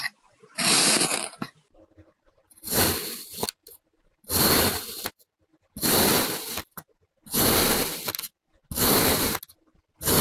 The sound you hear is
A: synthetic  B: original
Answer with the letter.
B